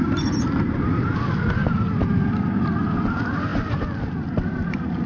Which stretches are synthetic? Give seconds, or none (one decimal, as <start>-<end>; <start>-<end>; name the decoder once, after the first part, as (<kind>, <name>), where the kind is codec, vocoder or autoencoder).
none